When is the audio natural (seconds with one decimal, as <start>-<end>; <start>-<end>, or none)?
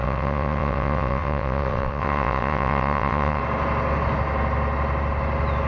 3.4-5.7